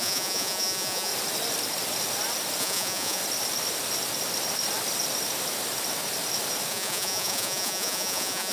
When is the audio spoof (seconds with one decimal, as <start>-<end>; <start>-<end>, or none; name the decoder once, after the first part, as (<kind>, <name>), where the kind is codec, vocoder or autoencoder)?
0.0-1.1 (vocoder, Vocos); 2.6-3.2; 6.7-8.5